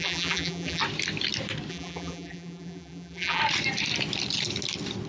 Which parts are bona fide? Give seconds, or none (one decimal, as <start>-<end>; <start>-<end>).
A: 0.8-1.7; 3.4-5.1

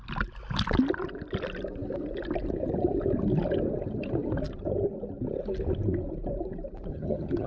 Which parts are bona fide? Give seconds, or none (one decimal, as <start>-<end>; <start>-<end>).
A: 0.0-6.9

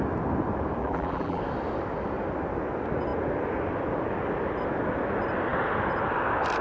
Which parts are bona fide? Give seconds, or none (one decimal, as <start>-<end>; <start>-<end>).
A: 0.0-0.8; 1.4-6.6